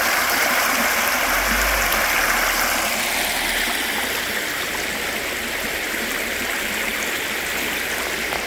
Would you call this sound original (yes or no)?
yes